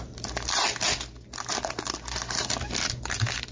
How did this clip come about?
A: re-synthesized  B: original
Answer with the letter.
B